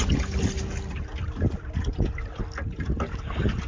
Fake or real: real